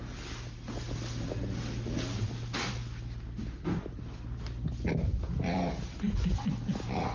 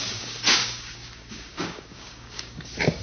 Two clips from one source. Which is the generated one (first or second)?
second